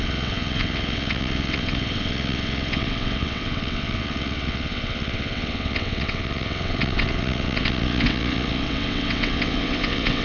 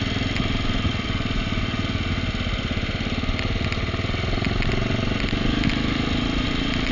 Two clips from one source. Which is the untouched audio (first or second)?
second